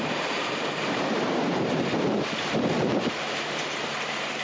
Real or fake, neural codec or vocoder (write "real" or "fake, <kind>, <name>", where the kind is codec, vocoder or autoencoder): fake, vocoder, BigVGAN v2